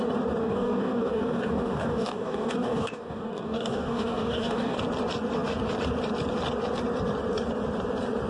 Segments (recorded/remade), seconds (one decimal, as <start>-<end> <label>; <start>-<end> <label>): 0.0-0.4 recorded; 0.4-4.8 remade; 4.8-8.3 recorded